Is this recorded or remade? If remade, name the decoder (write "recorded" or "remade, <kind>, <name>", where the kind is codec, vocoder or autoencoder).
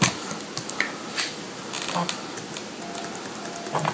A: recorded